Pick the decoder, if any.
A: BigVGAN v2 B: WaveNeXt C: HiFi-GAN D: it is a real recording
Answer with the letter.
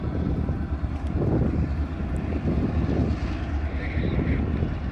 D